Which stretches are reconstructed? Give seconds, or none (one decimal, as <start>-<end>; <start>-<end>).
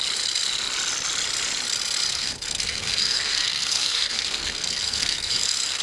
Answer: 2.1-5.8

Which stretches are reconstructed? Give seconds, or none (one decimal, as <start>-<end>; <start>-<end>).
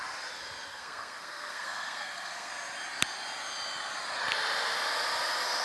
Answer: 0.7-2.5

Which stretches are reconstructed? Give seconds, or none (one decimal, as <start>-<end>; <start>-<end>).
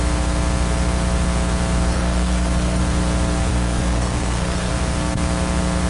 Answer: 1.9-2.8; 3.5-4.7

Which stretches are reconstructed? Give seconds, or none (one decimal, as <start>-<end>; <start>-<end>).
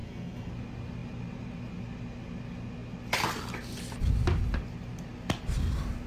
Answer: 0.0-0.5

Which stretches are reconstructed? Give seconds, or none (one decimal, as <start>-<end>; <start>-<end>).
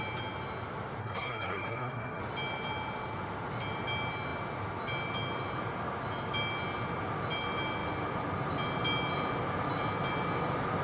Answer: 1.0-2.2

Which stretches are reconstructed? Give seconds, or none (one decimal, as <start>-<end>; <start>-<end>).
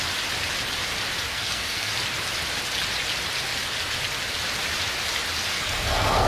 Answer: 1.3-1.9; 5.5-6.3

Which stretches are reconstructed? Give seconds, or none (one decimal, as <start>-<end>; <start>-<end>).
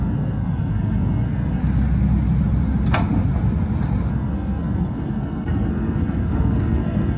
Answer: 0.0-1.6; 4.1-7.2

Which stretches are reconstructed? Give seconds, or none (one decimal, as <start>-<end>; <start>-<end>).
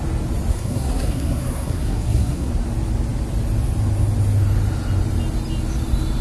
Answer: 0.5-2.5